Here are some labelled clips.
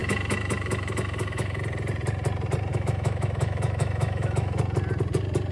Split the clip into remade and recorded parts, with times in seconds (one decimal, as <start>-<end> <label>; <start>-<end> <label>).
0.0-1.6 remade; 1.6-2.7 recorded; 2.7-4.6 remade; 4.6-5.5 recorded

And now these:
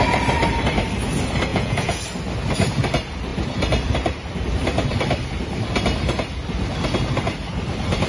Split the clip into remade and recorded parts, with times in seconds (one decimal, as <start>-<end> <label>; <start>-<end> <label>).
0.0-1.5 recorded; 1.5-2.0 remade; 2.0-8.1 recorded

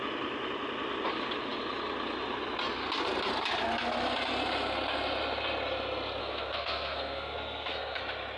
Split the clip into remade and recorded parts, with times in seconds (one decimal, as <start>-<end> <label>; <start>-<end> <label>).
0.0-6.2 recorded; 6.2-8.0 remade; 8.0-8.4 recorded

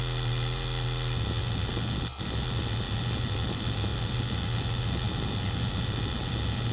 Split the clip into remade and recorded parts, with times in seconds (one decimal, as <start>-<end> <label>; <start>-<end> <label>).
0.0-6.7 recorded

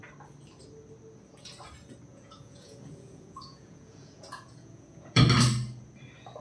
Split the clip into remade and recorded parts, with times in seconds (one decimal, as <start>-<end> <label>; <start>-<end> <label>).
0.0-2.1 recorded; 2.1-5.2 remade; 5.2-6.4 recorded

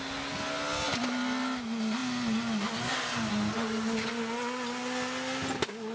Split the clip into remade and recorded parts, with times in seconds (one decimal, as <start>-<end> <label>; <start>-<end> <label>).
0.0-5.9 recorded

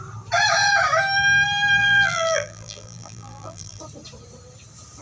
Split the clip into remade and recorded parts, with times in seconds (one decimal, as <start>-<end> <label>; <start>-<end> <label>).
0.0-1.8 recorded; 1.8-3.8 remade; 3.8-5.0 recorded